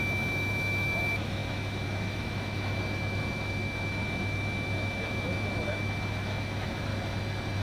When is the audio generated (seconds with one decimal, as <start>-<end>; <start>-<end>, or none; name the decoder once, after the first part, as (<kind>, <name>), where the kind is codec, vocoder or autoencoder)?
0.0-6.9 (autoencoder, DAC-VAE)